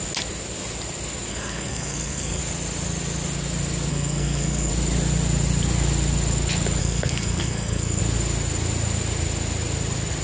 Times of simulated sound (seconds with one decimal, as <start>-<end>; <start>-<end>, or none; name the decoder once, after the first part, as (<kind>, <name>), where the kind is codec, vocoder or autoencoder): 1.3-2.4 (codec, SNAC); 3.9-4.7; 6.8-8.0

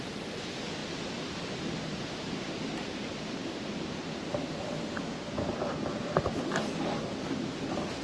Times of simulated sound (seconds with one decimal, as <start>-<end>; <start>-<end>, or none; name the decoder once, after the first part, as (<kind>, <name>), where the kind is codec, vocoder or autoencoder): none

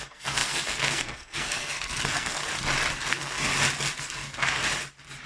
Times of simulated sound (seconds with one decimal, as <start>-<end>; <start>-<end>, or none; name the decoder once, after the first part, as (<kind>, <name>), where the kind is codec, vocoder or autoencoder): 0.0-2.4 (codec, SNAC); 3.1-3.5; 4.0-4.6

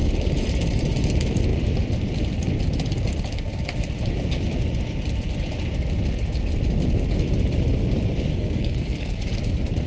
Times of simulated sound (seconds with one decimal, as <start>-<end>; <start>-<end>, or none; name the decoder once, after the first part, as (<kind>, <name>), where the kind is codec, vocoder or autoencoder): 8.3-9.2 (codec, SNAC)

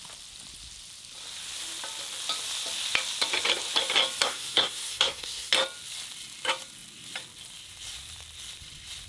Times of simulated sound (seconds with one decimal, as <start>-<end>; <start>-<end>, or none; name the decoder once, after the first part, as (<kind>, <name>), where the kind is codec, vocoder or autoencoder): 4.2-5.5 (codec, SNAC)